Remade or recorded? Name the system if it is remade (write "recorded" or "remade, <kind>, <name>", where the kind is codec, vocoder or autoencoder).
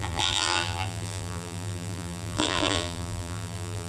remade, vocoder, BigVGAN v2